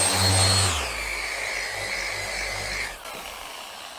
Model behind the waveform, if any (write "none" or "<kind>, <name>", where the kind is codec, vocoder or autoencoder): none